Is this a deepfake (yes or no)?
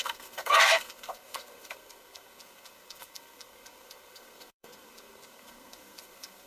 yes